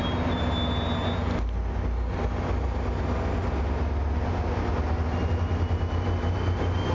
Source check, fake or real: real